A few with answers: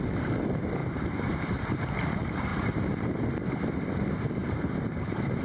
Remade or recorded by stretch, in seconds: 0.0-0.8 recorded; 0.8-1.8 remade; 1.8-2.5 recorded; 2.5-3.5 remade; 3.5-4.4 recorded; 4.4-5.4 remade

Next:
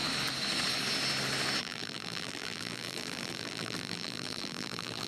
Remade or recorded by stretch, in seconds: 0.0-1.6 recorded; 1.6-5.1 remade

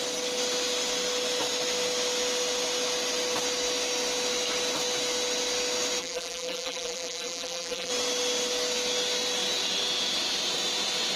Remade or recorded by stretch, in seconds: 0.0-6.0 recorded; 6.0-7.9 remade; 7.9-11.2 recorded

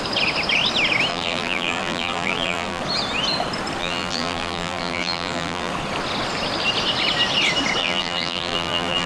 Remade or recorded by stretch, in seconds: 0.0-1.1 recorded; 1.1-2.8 remade; 2.8-3.8 recorded; 3.8-5.7 remade; 5.7-7.8 recorded; 7.8-9.1 remade

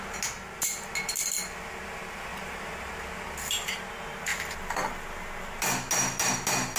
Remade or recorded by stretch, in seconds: 0.0-2.3 recorded; 2.3-2.9 remade; 2.9-6.8 recorded

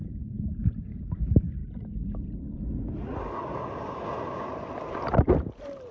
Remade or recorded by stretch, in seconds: 0.0-1.6 remade; 1.6-4.9 recorded; 4.9-5.9 remade

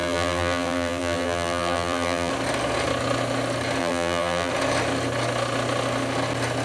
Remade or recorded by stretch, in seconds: 0.0-2.3 remade; 2.3-3.8 recorded; 3.8-4.5 remade; 4.5-6.6 recorded

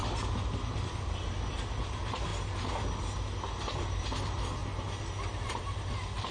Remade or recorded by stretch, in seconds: 0.0-0.5 recorded; 0.5-2.3 remade; 2.3-3.9 recorded; 3.9-4.6 remade; 4.6-5.5 recorded; 5.5-6.3 remade